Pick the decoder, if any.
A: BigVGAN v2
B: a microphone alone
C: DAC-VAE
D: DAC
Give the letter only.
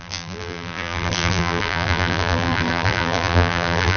A